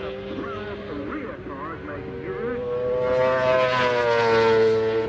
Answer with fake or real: real